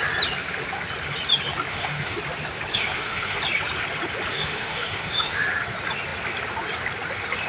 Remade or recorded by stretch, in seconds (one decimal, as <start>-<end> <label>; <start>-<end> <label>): 0.0-1.7 recorded; 1.7-2.2 remade; 2.2-2.7 recorded; 2.7-3.4 remade; 3.4-4.3 recorded; 4.3-5.3 remade; 5.3-7.5 recorded